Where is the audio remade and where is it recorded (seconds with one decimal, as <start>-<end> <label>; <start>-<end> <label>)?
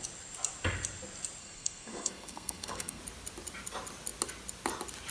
0.0-1.4 recorded; 1.4-3.0 remade; 3.0-5.1 recorded